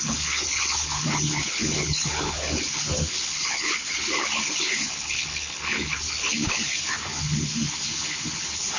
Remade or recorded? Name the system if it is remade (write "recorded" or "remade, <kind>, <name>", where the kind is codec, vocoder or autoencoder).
remade, codec, HILCodec